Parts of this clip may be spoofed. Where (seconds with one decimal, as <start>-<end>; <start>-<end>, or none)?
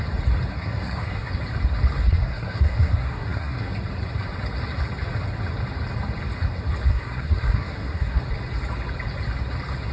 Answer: 0.5-1.3; 2.0-3.7; 6.9-8.2